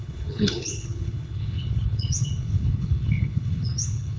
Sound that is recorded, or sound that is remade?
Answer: remade